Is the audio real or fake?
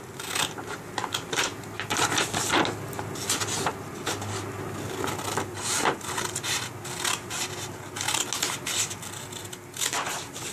real